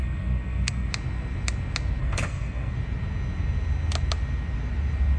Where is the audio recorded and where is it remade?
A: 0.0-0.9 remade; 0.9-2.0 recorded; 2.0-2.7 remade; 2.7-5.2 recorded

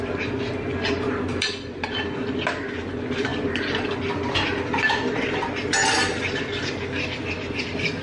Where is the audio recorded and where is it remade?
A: 0.0-8.0 recorded

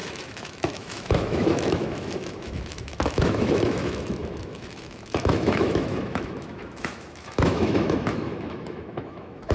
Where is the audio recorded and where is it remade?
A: 0.0-9.5 remade

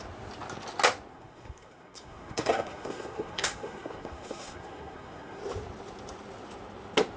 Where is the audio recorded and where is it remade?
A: 0.0-1.1 recorded; 1.1-5.4 remade; 5.4-7.2 recorded

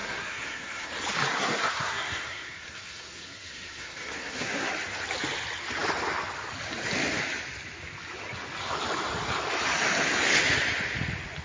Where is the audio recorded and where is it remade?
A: 0.0-0.9 remade; 0.9-1.3 recorded; 1.3-4.7 remade; 4.7-11.4 recorded

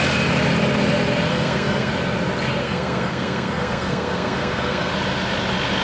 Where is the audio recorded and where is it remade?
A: 0.0-1.3 recorded; 1.3-1.9 remade; 1.9-2.6 recorded; 2.6-4.9 remade; 4.9-5.8 recorded